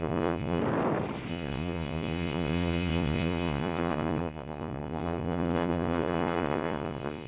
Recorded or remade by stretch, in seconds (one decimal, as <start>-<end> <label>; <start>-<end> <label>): 0.0-0.6 remade; 0.6-1.3 recorded; 1.3-7.3 remade